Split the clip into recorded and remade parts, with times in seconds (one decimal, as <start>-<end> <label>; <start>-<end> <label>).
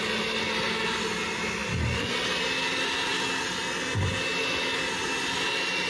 0.0-5.9 recorded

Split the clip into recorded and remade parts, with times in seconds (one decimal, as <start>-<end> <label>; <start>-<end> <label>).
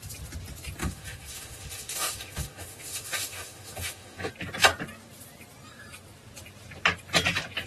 0.0-0.8 recorded; 0.8-4.3 remade; 4.3-7.7 recorded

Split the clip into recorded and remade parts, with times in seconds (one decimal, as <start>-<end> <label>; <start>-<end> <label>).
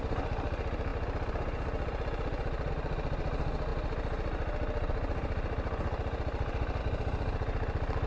0.0-8.1 recorded